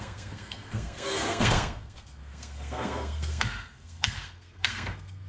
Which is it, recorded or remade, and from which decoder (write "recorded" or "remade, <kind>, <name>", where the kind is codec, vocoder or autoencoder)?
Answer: remade, codec, SNAC